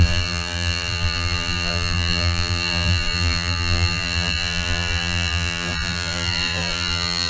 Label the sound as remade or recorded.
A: remade